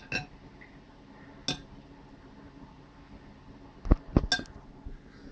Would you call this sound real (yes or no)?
yes